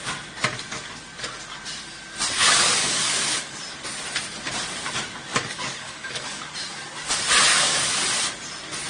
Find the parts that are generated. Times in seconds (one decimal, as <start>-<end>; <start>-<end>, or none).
2.4-3.6; 5.3-6.4; 7.5-8.0